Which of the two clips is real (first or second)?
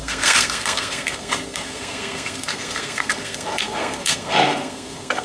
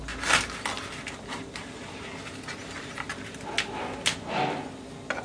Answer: second